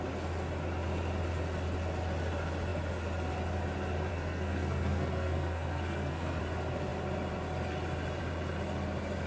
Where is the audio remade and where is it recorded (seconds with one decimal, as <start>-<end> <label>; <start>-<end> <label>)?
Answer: 0.0-4.1 recorded; 4.1-6.4 remade; 6.4-9.3 recorded